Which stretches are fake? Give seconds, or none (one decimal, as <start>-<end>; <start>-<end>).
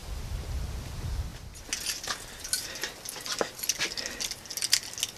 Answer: none